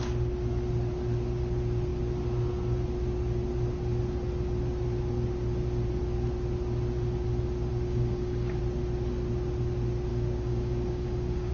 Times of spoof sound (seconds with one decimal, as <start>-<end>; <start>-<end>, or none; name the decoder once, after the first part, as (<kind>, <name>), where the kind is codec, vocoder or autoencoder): 7.7-8.6 (codec, DAC); 10.1-11.5

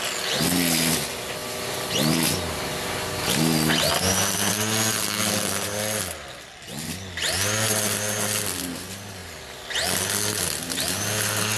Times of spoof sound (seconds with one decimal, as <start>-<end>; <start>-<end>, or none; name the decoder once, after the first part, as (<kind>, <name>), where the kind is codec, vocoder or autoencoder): none

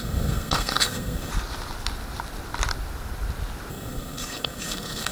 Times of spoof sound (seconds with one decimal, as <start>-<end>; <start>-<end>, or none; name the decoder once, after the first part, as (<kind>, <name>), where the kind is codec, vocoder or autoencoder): 0.0-1.3 (codec, SNAC); 3.7-5.1